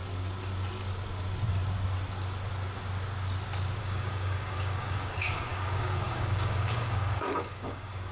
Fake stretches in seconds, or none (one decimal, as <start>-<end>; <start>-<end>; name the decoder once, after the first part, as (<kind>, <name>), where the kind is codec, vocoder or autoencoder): 3.8-8.1 (codec, DAC)